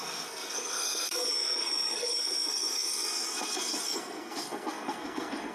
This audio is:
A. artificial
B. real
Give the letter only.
A